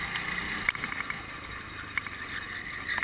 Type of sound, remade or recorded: recorded